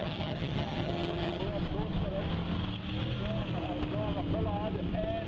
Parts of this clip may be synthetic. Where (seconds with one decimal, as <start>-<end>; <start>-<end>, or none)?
0.0-1.4